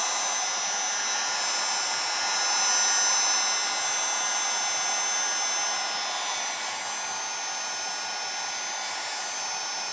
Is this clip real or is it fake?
real